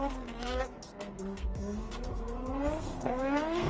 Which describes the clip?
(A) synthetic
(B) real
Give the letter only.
A